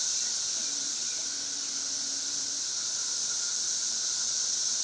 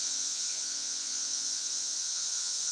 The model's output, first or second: second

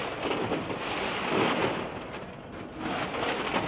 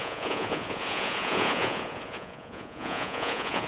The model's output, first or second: second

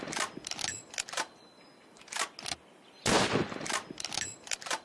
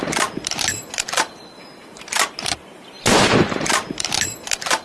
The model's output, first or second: second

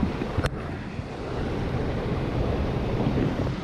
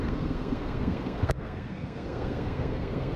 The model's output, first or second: second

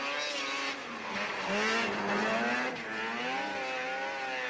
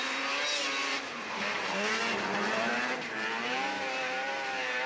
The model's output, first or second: second